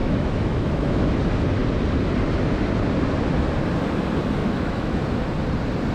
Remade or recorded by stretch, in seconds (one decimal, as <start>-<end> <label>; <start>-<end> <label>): 0.0-1.2 remade; 1.2-4.4 recorded; 4.4-5.0 remade; 5.0-5.9 recorded